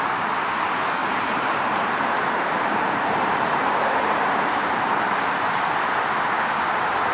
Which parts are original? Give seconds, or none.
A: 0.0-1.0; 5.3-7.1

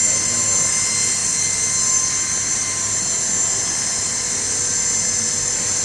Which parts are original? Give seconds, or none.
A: 0.0-5.8

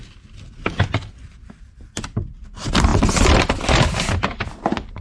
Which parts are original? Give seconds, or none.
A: 0.0-5.0

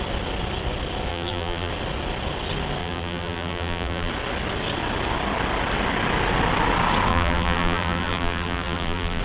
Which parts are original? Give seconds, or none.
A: 0.0-1.1; 1.7-2.8; 4.1-7.1

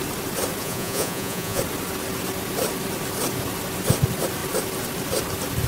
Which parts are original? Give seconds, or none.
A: 0.0-0.6; 1.6-5.7

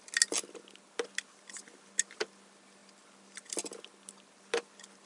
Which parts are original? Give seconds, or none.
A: 0.0-5.1